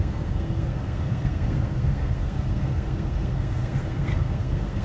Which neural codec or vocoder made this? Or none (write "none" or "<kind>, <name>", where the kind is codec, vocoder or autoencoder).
codec, SNAC